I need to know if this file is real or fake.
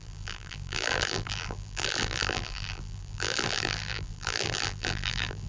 fake